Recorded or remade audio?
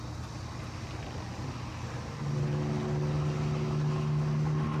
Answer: recorded